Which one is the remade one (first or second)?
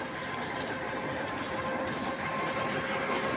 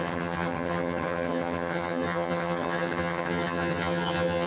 second